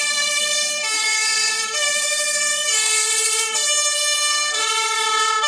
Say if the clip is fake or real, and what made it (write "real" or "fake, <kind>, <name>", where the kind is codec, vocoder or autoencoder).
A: fake, codec, SNAC